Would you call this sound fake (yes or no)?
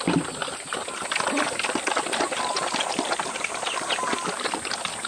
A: no